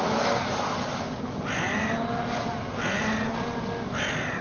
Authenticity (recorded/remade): recorded